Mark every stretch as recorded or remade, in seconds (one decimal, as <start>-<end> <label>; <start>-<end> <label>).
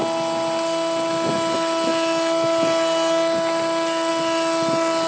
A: 0.0-5.1 recorded